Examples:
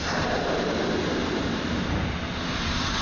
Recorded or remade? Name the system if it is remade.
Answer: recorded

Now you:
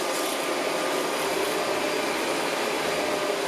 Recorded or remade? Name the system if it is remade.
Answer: recorded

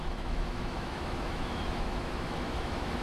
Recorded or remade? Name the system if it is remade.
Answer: remade, autoencoder, DAC-VAE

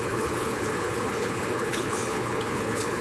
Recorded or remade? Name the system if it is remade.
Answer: remade, codec, HILCodec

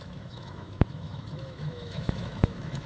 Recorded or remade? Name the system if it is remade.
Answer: remade, autoencoder, DAC-VAE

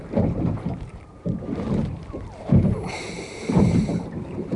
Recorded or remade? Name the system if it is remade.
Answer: remade, vocoder, BigVGAN v2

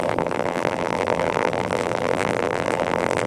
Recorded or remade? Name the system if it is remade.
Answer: remade, vocoder, BigVGAN v2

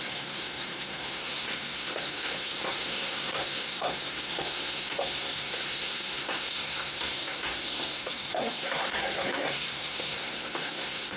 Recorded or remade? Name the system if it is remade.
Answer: remade, codec, SNAC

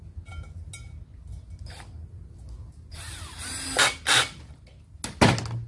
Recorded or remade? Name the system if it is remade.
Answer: recorded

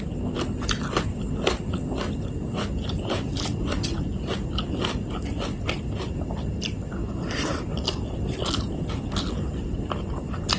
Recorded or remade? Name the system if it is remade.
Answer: recorded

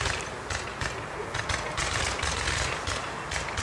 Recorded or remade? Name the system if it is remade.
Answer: recorded